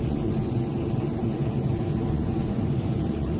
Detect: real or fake fake